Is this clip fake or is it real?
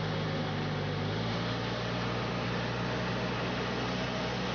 real